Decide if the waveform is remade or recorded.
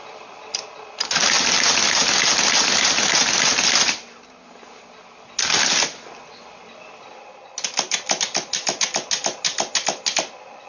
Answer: recorded